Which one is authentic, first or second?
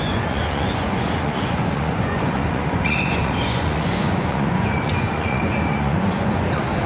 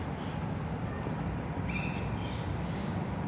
second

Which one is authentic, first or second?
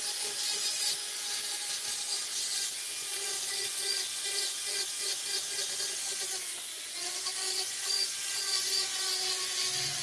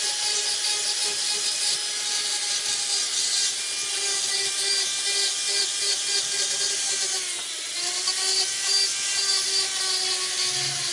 second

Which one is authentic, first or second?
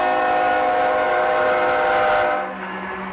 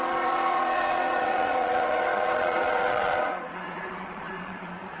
first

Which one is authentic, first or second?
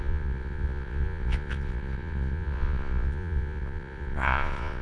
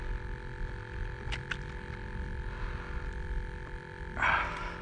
second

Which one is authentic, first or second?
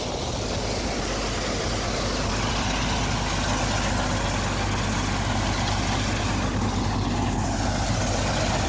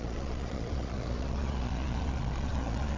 first